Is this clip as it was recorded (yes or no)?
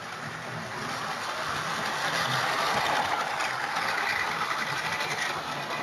yes